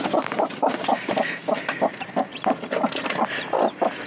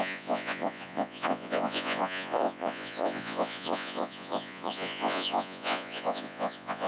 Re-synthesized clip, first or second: second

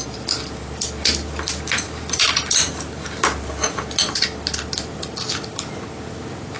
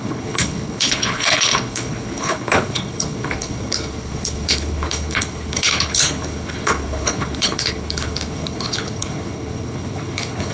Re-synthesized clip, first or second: second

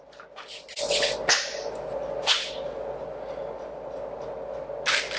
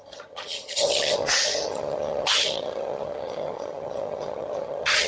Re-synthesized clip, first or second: second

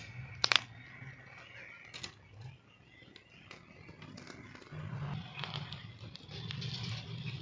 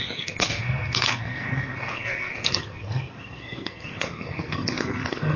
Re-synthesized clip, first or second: second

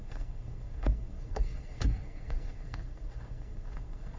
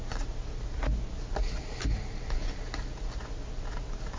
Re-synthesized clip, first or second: first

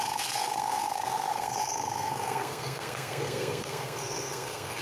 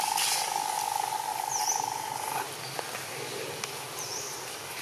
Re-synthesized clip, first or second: first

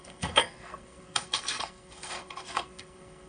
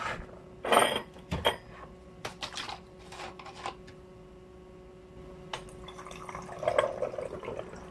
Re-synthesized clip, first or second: first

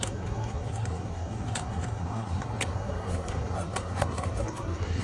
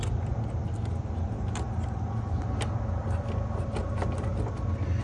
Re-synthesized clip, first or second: first